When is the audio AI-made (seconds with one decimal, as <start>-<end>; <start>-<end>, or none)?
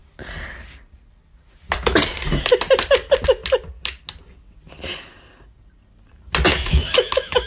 6.5-7.5